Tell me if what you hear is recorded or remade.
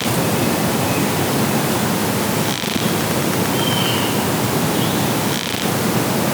recorded